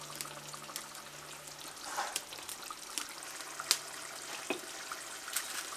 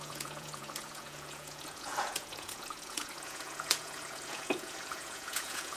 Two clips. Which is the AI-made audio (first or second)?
second